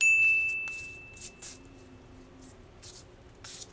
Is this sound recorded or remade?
recorded